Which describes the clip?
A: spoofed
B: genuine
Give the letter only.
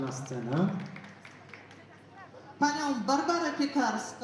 B